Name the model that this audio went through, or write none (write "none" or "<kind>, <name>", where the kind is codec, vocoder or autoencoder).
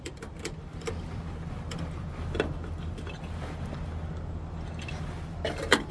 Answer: vocoder, BigVGAN v2